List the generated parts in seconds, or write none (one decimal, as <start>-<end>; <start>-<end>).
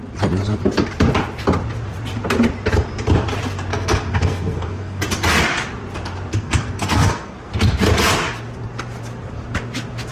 3.7-5.0; 6.3-7.5